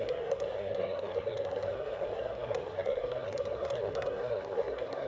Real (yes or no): no